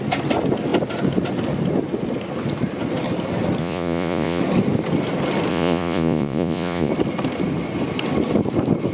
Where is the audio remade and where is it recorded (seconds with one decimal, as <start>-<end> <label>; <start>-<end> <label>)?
0.0-3.6 recorded; 3.6-4.4 remade; 4.4-5.5 recorded; 5.5-6.9 remade; 6.9-8.9 recorded